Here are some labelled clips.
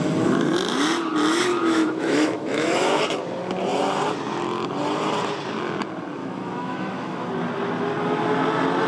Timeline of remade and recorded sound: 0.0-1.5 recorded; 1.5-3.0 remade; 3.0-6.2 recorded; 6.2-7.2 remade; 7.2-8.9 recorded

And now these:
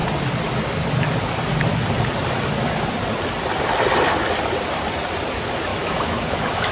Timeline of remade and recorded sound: 0.0-5.7 recorded; 5.7-6.7 remade

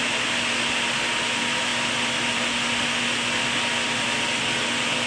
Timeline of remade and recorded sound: 0.0-5.1 recorded

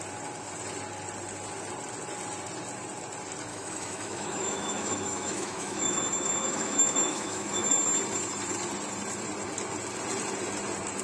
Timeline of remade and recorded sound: 0.0-3.5 recorded; 3.5-7.7 remade; 7.7-11.0 recorded

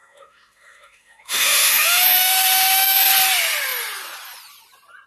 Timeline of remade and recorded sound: 0.0-3.1 remade; 3.1-5.1 recorded